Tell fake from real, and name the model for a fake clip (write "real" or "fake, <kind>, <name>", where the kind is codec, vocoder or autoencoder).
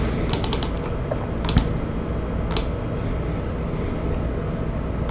real